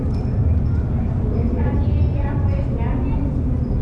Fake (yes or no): no